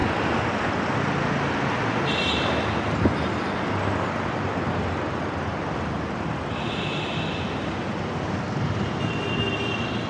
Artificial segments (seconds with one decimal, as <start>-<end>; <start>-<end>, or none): none

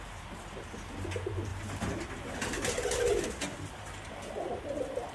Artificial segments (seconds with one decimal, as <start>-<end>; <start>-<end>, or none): none

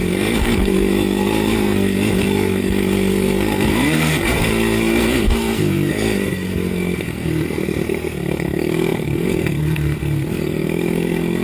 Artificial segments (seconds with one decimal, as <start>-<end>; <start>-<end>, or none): 0.0-11.4

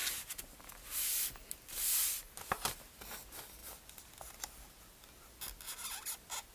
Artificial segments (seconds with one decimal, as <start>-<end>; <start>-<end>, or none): none

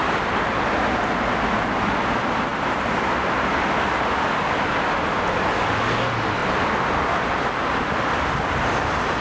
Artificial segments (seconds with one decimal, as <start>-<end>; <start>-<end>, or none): none

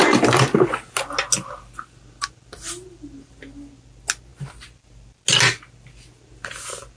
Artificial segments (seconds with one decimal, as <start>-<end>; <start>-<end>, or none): none